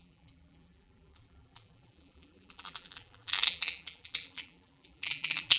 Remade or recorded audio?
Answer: remade